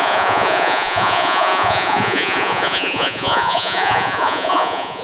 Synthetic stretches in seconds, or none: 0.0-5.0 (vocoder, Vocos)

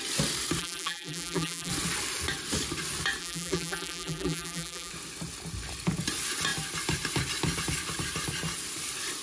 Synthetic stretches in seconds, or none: 0.6-1.7 (vocoder, BigVGAN v2); 3.2-4.9